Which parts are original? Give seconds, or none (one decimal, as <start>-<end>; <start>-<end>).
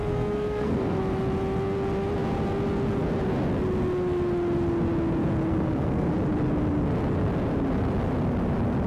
1.0-5.5; 6.1-8.9